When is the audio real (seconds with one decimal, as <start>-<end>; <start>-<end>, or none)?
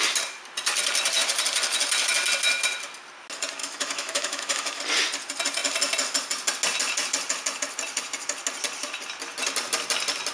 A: 0.0-3.6; 4.8-10.3